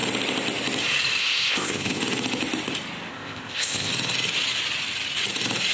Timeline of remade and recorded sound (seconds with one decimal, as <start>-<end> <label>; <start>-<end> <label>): 0.0-1.2 recorded; 1.2-2.0 remade; 2.0-3.1 recorded; 3.1-3.9 remade; 3.9-5.7 recorded